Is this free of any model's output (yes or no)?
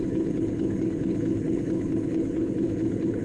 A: no